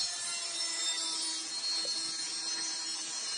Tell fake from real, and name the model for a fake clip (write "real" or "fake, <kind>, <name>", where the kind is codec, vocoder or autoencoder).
real